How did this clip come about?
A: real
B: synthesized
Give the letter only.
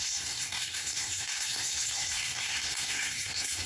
B